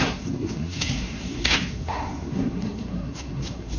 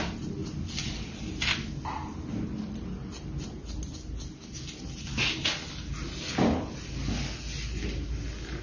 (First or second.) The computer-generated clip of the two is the first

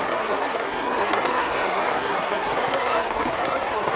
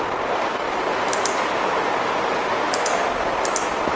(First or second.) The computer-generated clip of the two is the first